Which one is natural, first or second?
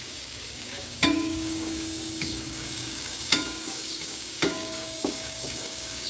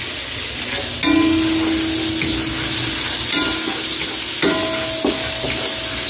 second